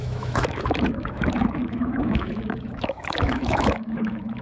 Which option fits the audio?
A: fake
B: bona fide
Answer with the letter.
A